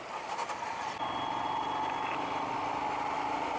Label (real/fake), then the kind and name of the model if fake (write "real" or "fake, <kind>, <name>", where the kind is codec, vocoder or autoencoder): real